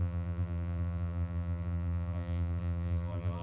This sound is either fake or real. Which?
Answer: fake